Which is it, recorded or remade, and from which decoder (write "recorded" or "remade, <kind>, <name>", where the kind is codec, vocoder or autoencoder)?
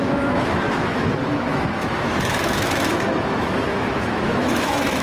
remade, autoencoder, DAC-VAE